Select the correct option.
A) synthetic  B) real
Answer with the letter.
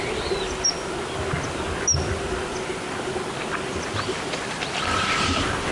B